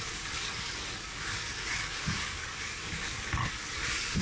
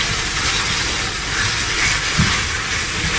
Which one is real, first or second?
second